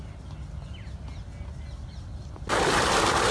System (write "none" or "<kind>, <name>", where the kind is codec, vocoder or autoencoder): none